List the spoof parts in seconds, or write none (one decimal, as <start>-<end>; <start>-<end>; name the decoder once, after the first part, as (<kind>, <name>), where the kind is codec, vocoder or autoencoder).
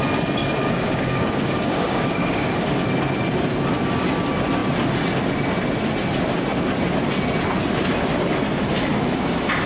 0.6-2.5 (codec, DAC)